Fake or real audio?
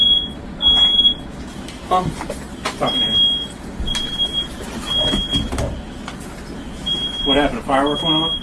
real